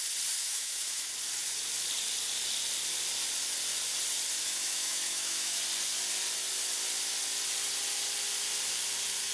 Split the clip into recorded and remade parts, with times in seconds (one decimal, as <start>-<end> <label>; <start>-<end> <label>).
0.0-0.4 recorded; 0.4-1.1 remade; 1.1-4.4 recorded; 4.4-5.6 remade; 5.6-9.3 recorded